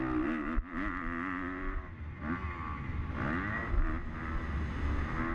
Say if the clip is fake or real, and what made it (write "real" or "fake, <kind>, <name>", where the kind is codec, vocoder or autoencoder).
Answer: real